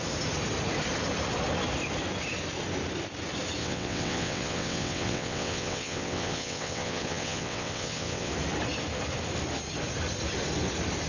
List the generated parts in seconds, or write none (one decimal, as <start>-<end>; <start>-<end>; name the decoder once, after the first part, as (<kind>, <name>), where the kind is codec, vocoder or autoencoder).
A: 3.6-8.3 (vocoder, WaveNeXt)